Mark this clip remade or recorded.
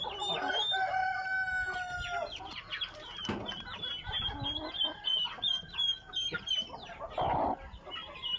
recorded